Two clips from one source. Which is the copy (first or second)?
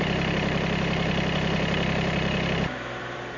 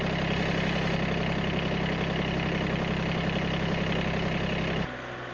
first